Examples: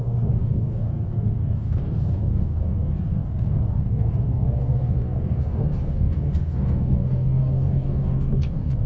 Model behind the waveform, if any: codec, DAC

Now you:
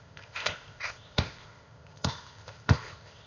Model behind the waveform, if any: codec, ZipCodec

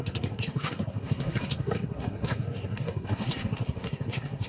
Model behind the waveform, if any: codec, SNAC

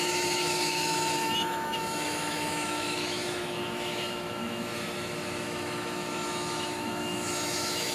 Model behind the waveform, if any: autoencoder, DAC-VAE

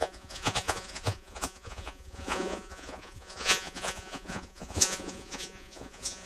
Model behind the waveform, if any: vocoder, Vocos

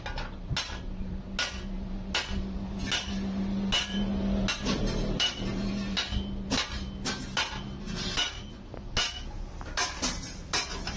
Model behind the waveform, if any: none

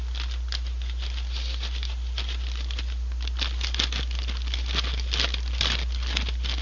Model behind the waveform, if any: none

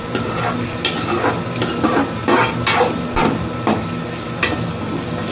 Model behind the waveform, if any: none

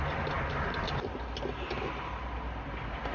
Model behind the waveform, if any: none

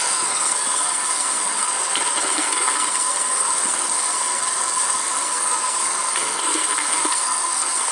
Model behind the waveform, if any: codec, SNAC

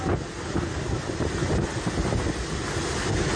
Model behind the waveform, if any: none